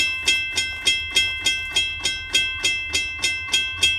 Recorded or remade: recorded